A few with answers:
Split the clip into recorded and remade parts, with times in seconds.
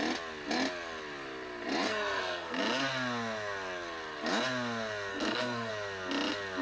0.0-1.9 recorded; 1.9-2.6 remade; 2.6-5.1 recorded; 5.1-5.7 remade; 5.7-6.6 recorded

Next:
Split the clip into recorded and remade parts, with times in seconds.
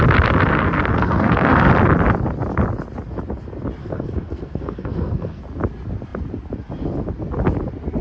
0.0-1.0 recorded; 1.0-1.7 remade; 1.7-3.8 recorded; 3.8-5.4 remade; 5.4-8.0 recorded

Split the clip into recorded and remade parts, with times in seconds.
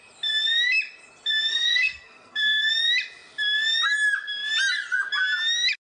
0.0-1.5 recorded; 1.5-2.7 remade; 2.7-6.0 recorded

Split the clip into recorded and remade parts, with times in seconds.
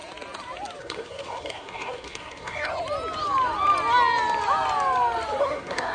0.0-0.8 recorded; 0.8-2.7 remade; 2.7-5.4 recorded; 5.4-5.9 remade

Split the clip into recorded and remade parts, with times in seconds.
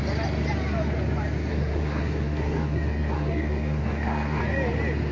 0.0-1.5 recorded; 1.5-4.4 remade; 4.4-5.1 recorded